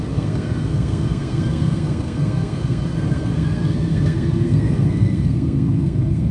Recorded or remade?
remade